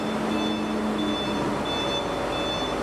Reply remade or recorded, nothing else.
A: recorded